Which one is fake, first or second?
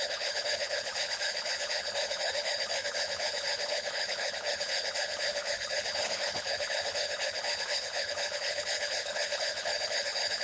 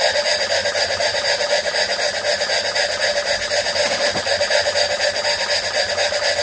first